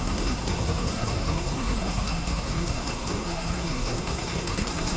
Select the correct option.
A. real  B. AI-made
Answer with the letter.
B